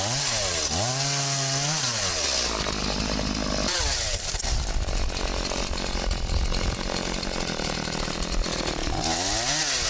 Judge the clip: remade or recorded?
recorded